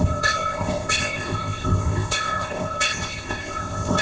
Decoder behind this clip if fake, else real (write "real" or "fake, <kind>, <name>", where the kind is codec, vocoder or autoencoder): fake, codec, ZipCodec